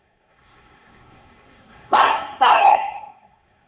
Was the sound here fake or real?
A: fake